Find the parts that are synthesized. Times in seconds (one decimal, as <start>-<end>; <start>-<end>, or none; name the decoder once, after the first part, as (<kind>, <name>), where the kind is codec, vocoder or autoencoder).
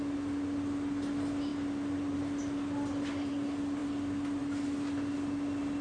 1.5-3.3 (vocoder, BigVGAN v2)